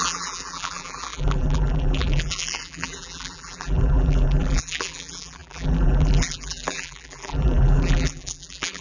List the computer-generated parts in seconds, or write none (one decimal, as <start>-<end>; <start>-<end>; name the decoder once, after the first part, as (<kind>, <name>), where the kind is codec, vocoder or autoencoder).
0.0-8.8 (vocoder, BigVGAN v2)